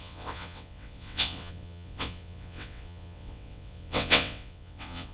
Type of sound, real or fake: fake